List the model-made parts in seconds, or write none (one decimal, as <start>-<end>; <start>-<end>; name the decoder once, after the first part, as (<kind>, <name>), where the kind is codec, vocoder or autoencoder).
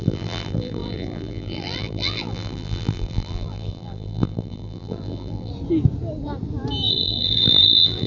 0.0-5.5 (vocoder, BigVGAN v2); 6.9-8.1